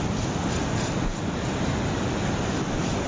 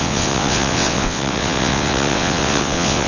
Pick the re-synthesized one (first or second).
second